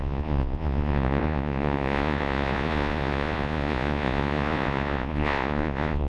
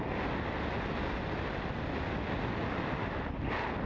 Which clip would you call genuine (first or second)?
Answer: second